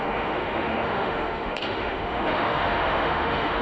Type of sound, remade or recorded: remade